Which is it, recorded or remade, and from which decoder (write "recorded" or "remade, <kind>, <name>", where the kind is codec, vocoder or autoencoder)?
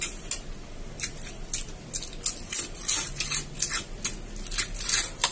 recorded